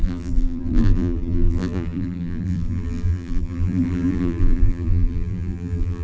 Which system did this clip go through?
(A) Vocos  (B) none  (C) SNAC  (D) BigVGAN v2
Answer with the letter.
D